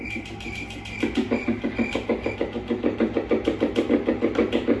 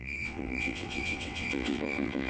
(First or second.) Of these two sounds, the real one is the first